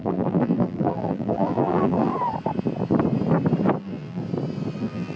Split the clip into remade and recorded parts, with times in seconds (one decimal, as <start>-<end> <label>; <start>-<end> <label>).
0.0-2.1 remade; 2.1-3.8 recorded; 3.8-4.2 remade; 4.2-4.8 recorded; 4.8-5.2 remade